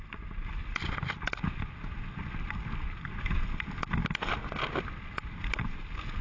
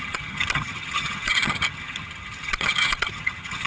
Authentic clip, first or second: first